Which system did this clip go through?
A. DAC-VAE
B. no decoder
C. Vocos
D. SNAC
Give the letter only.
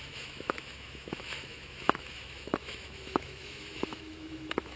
A